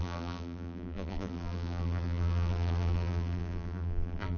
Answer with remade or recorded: remade